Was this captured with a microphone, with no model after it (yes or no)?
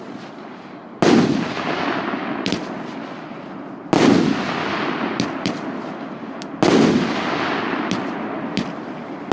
yes